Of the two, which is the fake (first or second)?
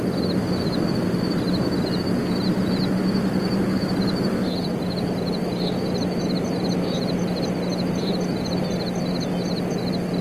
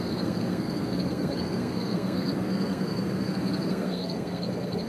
second